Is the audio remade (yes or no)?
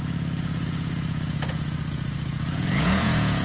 yes